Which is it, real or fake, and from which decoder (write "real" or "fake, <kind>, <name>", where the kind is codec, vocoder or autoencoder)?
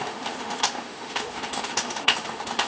fake, autoencoder, DAC-VAE